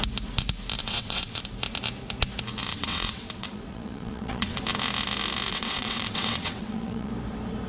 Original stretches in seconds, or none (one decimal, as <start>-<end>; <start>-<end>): 0.0-0.8; 1.4-2.7; 4.6-5.5; 7.1-7.7